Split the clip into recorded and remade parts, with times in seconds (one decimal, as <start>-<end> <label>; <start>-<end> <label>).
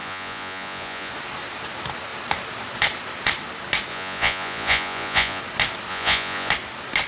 0.0-1.1 remade; 1.1-3.9 recorded; 3.9-5.4 remade; 5.4-5.9 recorded; 5.9-6.5 remade; 6.5-7.1 recorded